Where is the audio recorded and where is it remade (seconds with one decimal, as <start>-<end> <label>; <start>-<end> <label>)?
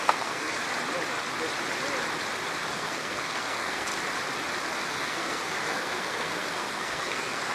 0.0-0.6 remade; 0.6-2.7 recorded; 2.7-3.9 remade; 3.9-4.9 recorded; 4.9-7.5 remade